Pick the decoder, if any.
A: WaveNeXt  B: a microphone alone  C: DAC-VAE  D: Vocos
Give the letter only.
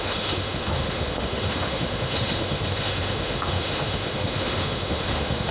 C